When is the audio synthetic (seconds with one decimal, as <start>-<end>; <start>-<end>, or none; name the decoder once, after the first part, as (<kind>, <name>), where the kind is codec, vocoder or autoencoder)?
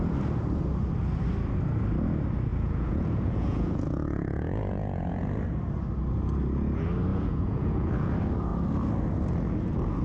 2.5-5.2 (vocoder, Vocos); 7.1-8.1